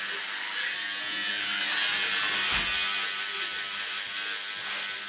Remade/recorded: recorded